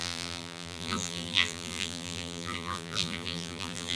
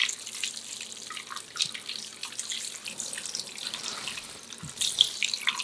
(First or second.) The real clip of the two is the second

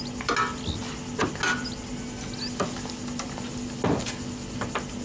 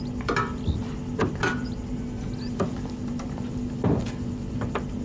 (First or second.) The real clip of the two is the first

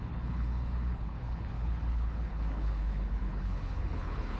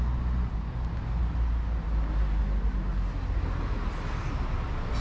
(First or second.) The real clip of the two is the second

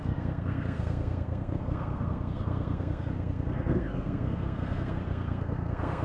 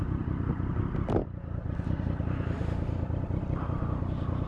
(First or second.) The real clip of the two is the second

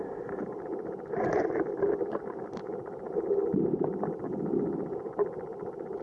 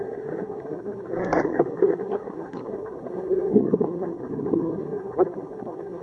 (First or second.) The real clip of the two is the first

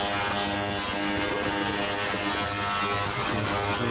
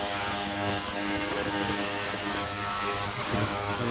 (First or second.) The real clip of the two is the first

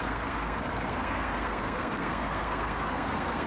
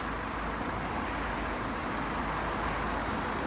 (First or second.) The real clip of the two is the second